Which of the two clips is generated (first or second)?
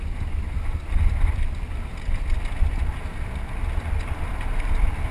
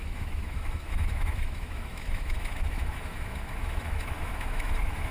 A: second